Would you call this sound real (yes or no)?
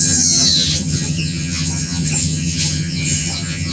no